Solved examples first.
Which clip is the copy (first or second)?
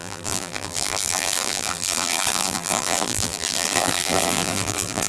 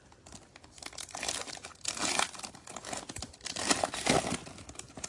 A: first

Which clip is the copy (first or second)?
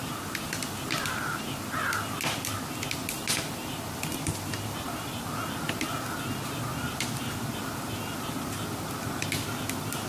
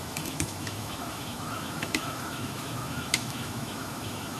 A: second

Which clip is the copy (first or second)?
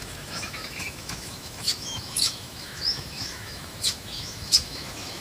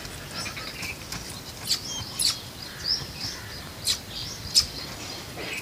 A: first